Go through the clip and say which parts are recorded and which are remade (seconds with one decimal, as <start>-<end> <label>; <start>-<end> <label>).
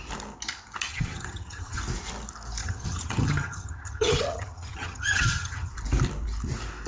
0.0-0.9 recorded; 0.9-1.8 remade; 1.8-2.6 recorded; 2.6-5.7 remade; 5.7-6.9 recorded